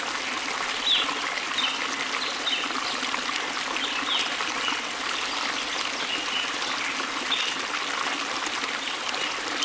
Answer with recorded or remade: recorded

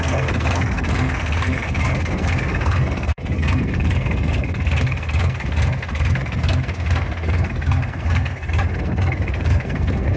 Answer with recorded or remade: remade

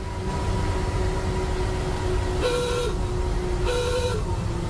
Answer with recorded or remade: recorded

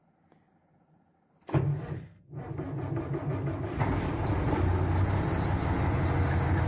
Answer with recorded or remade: recorded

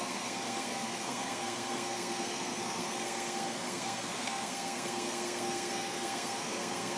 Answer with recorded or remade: remade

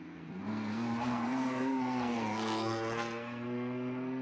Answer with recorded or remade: remade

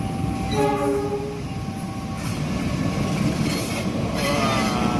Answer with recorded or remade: recorded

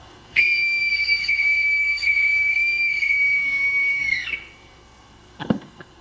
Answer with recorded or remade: remade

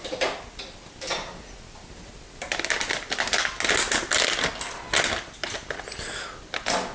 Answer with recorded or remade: recorded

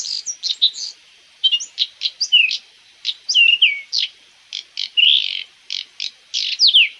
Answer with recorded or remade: recorded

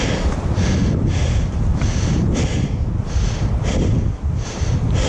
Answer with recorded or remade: recorded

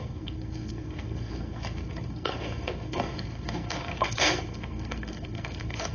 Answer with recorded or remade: remade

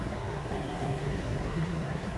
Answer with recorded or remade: remade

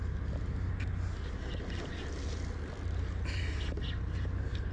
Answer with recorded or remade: recorded